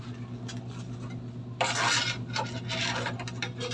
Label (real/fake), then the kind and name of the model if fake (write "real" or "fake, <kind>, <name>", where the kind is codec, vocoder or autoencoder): real